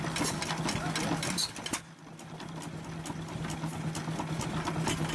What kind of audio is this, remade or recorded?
recorded